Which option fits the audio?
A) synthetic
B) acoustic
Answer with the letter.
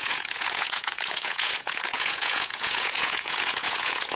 A